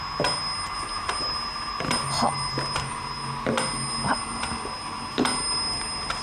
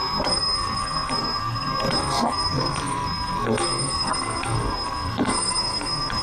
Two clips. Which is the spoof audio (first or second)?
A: second